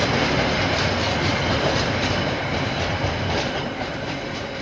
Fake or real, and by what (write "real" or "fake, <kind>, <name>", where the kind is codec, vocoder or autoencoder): real